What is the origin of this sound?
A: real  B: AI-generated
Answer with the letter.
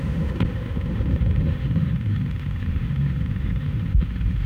B